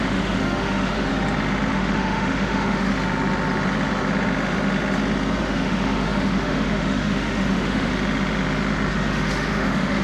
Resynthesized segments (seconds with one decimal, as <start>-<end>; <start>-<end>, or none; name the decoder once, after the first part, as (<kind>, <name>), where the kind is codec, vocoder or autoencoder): 0.0-1.1 (autoencoder, DAC-VAE); 1.7-2.9; 5.4-7.9; 8.9-10.0